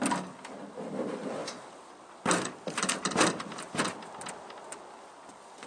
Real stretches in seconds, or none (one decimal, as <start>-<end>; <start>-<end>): 0.0-1.4; 4.8-5.7